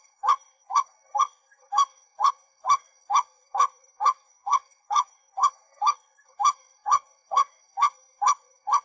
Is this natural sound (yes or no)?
no